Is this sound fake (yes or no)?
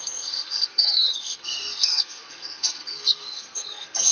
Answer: yes